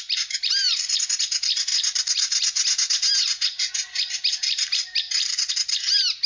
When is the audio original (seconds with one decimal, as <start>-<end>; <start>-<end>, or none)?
0.0-6.3